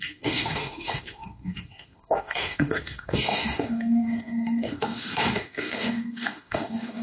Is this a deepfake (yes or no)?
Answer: yes